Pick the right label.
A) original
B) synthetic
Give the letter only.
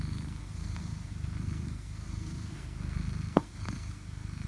B